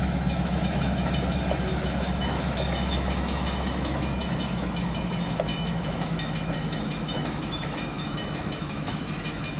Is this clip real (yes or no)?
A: no